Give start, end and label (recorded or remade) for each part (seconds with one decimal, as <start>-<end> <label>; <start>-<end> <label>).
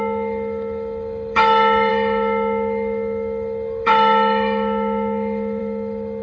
0.0-6.2 remade